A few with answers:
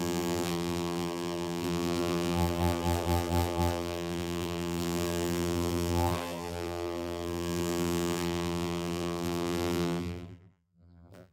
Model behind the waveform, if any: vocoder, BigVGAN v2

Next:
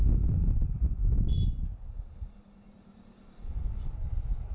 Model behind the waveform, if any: none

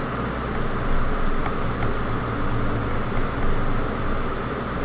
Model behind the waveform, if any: none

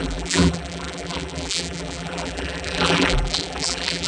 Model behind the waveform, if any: vocoder, BigVGAN v2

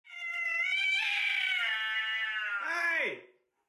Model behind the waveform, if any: none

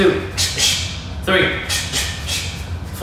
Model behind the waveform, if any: none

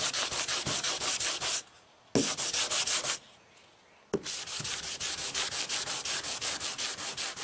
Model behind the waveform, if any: none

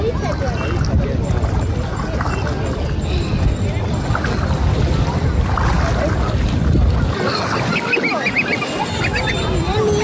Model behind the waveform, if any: none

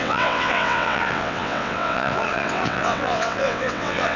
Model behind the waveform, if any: vocoder, WaveNeXt